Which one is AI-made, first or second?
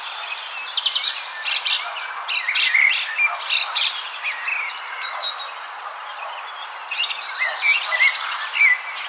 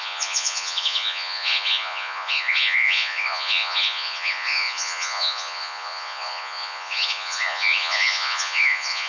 second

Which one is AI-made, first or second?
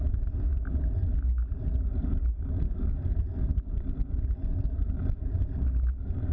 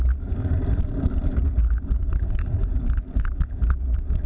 second